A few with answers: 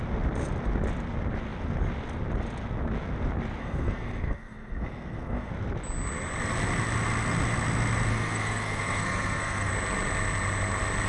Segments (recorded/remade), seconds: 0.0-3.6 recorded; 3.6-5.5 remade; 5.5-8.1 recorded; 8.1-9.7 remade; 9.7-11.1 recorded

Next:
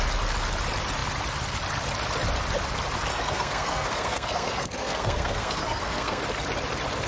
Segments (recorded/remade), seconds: 0.0-3.1 recorded; 3.1-6.2 remade; 6.2-7.1 recorded

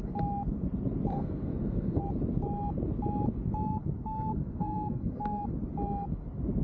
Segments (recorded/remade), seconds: 0.0-1.1 recorded; 1.1-2.0 remade; 2.0-4.3 recorded; 4.3-5.4 remade; 5.4-6.6 recorded

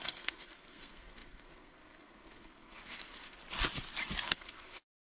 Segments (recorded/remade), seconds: 0.0-3.4 remade; 3.4-4.3 recorded; 4.3-5.0 remade

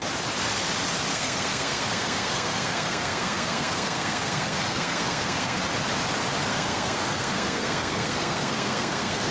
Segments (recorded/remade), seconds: 0.0-1.1 recorded; 1.1-5.6 remade; 5.6-6.5 recorded; 6.5-9.3 remade